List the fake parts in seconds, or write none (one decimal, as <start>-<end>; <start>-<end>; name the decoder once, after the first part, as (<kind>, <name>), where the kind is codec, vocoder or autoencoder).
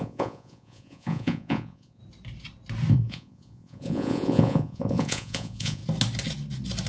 0.0-2.0 (vocoder, Vocos); 2.9-5.8